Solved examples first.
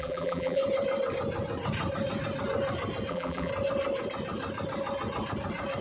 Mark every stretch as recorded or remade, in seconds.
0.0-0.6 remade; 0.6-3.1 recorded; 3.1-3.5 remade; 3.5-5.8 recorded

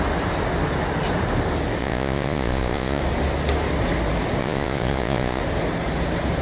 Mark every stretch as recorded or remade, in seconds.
0.0-1.8 recorded; 1.8-3.0 remade; 3.0-4.4 recorded; 4.4-5.4 remade; 5.4-6.4 recorded

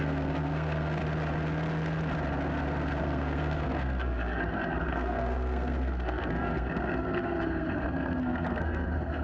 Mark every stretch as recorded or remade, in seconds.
0.0-1.0 remade; 1.0-3.0 recorded; 3.0-9.2 remade